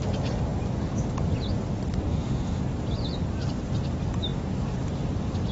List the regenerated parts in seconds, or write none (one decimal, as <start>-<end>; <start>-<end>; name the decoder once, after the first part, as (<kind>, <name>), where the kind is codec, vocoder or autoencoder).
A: 2.1-2.6 (autoencoder, DAC-VAE)